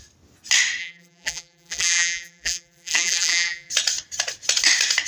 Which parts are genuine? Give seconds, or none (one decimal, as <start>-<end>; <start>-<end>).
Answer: 0.0-0.8; 3.7-5.1

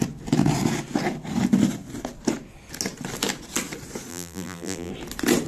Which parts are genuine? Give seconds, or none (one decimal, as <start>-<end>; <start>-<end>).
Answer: 0.0-4.1; 4.9-5.5

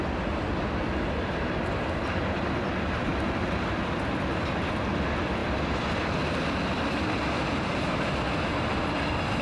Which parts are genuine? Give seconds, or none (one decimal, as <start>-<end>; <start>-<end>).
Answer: 0.0-3.1; 4.7-5.4; 6.6-9.4

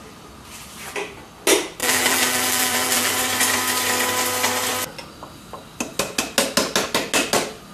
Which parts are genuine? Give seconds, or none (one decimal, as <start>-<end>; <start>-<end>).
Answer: 0.0-1.8; 3.1-7.7

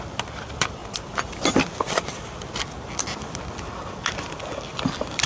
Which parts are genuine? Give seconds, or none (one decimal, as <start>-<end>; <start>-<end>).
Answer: 0.8-4.0